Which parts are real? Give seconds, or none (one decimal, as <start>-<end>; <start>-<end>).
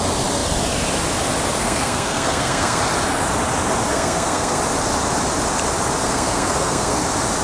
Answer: 0.0-1.6; 2.8-3.9; 4.6-6.0; 7.0-7.4